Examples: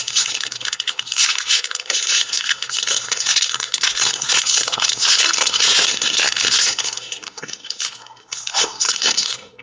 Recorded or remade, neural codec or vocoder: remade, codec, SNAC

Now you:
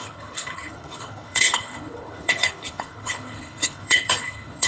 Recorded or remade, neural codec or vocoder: remade, codec, HILCodec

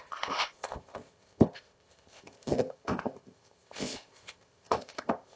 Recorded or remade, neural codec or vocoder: remade, codec, ZipCodec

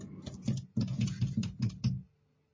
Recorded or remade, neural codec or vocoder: recorded